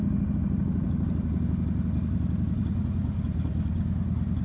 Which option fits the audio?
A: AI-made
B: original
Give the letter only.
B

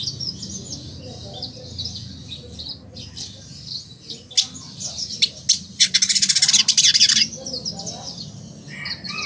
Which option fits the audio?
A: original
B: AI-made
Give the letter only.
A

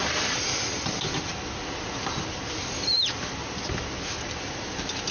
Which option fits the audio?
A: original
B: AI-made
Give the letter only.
A